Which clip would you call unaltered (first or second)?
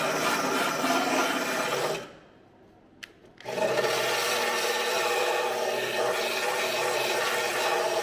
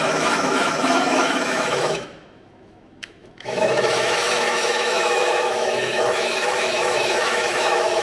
first